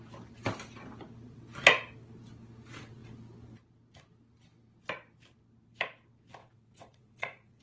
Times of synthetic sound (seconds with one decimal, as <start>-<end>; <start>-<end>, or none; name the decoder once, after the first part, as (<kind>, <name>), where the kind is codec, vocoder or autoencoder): 6.4-7.6 (vocoder, WaveNeXt)